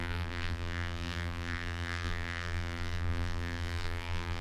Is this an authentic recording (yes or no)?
no